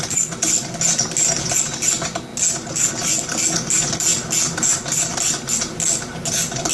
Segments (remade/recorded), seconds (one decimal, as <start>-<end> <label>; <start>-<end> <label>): 0.0-6.7 recorded